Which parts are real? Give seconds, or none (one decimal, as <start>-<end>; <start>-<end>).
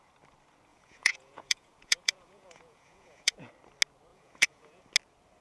0.0-0.7; 3.5-4.1; 4.8-5.4